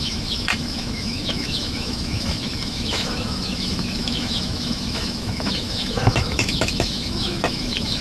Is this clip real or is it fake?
fake